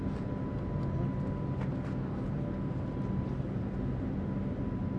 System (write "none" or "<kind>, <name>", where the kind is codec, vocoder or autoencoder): none